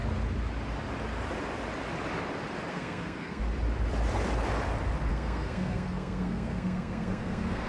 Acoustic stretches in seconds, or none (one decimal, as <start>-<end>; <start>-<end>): 0.0-2.7; 3.4-5.1